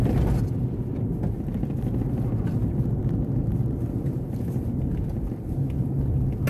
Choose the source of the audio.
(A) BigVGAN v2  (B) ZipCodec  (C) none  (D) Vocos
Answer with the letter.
C